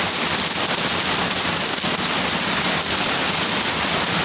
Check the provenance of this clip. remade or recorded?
recorded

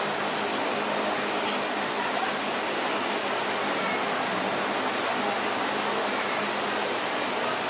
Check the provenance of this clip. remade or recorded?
recorded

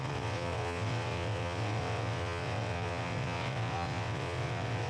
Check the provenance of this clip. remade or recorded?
remade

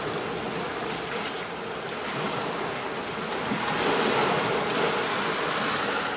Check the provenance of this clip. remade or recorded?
recorded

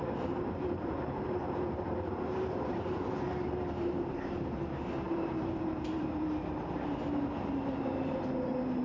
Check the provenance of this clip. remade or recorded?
remade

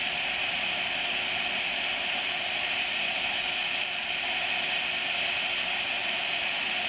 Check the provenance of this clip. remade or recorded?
recorded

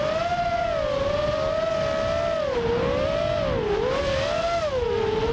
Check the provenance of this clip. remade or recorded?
recorded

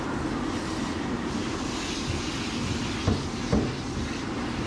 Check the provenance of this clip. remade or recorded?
recorded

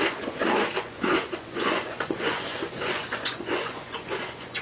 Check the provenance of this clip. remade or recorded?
remade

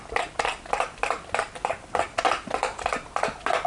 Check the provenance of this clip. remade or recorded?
remade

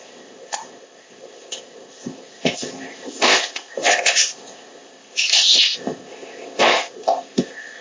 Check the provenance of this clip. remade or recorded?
remade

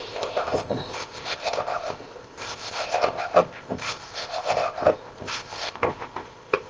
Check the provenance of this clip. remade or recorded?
remade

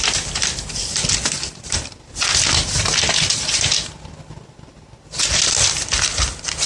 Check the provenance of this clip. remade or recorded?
recorded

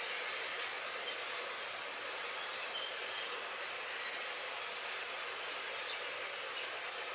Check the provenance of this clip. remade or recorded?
recorded